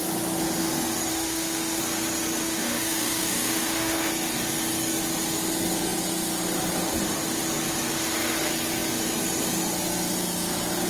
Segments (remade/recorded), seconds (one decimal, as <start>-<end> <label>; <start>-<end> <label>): 0.0-1.1 recorded; 1.1-1.8 remade; 1.8-2.4 recorded; 2.4-4.1 remade; 4.1-10.9 recorded